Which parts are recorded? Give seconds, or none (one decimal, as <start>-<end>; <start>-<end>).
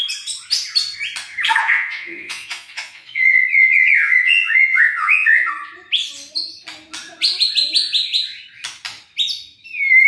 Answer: 0.0-1.6; 5.5-10.1